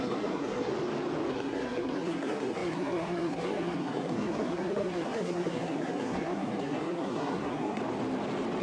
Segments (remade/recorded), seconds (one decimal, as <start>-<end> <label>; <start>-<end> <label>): 0.0-0.7 remade; 0.7-1.3 recorded; 1.3-7.8 remade; 7.8-8.6 recorded